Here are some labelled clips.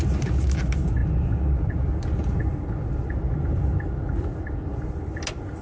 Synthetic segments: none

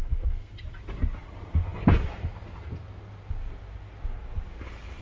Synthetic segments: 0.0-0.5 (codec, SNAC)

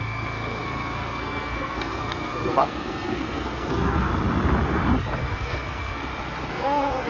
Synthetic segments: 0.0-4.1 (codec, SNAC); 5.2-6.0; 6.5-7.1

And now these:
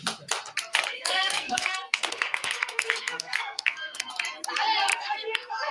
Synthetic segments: 0.7-4.1 (codec, SNAC); 4.9-5.7

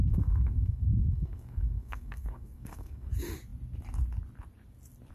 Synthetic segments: 0.0-3.1 (codec, SNAC)